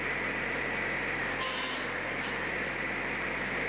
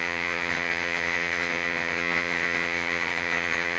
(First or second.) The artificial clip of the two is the second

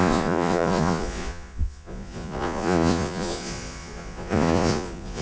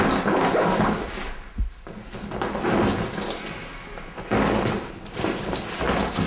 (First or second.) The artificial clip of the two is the first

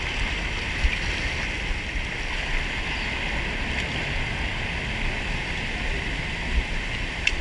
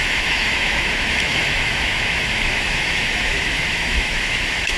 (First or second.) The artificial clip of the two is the second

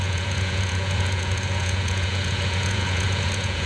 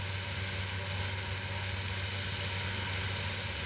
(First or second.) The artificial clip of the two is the first